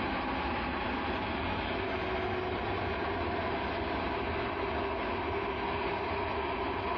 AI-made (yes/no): no